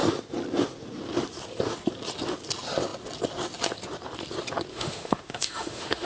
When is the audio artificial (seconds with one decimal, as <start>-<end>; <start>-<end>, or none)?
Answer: 4.7-6.1